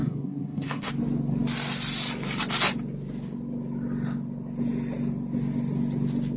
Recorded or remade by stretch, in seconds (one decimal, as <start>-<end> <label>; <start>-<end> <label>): 0.0-0.9 remade; 0.9-6.4 recorded